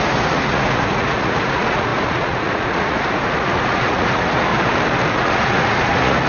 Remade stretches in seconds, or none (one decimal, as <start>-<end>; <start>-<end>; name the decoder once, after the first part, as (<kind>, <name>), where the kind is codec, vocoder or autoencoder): 0.0-4.5 (vocoder, Vocos); 5.1-6.3